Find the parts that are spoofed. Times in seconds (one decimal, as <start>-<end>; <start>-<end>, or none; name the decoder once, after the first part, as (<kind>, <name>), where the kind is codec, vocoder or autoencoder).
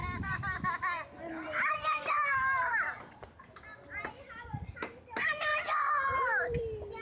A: 5.5-7.0 (vocoder, BigVGAN v2)